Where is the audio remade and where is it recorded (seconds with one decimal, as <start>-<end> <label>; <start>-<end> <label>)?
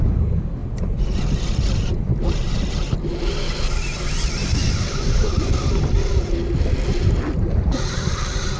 0.0-8.6 recorded